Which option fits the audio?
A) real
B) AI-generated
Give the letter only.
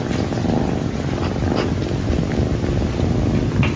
A